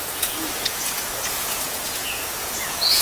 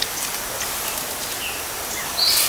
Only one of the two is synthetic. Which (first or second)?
first